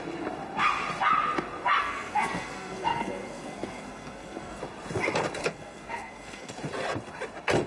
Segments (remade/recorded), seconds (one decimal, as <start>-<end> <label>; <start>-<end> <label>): 0.0-1.8 recorded; 1.8-4.6 remade; 4.6-5.4 recorded; 5.4-6.5 remade; 6.5-7.7 recorded